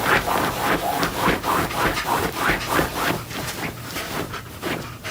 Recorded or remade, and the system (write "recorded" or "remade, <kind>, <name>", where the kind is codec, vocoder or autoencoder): recorded